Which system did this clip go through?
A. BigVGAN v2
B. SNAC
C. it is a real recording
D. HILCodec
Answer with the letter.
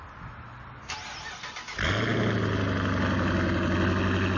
C